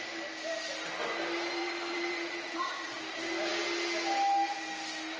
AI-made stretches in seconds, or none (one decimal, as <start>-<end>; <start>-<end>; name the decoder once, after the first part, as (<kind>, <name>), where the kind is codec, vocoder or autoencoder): 1.6-3.0 (vocoder, Vocos)